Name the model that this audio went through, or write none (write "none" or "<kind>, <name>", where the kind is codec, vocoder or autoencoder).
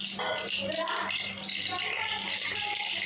none